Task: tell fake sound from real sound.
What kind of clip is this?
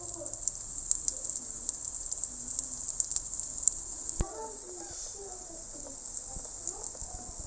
real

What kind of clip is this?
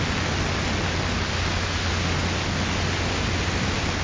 real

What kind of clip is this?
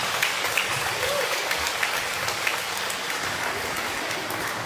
fake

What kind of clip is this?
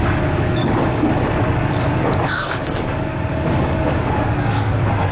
fake